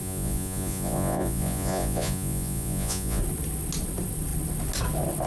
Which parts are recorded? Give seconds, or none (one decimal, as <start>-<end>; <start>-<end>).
3.2-5.3